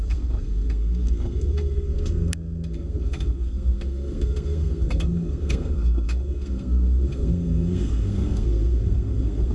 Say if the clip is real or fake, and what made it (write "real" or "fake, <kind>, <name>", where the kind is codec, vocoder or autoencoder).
fake, codec, SNAC